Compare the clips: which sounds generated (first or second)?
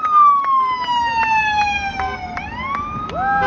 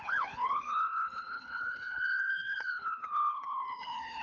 second